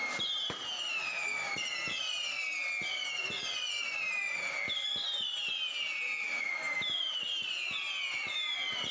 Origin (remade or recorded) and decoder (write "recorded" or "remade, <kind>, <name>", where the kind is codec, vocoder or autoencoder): recorded